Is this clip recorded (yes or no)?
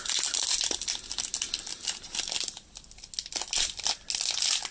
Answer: yes